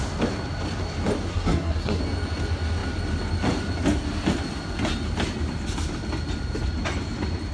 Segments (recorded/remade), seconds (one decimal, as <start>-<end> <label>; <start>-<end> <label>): 0.0-1.3 recorded; 1.3-2.0 remade; 2.0-7.5 recorded